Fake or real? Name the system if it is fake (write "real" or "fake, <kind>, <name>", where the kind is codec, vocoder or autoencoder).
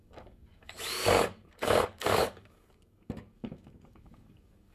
fake, codec, DAC